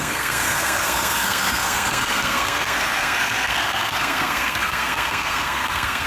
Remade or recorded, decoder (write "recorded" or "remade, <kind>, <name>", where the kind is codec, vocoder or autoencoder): remade, codec, SNAC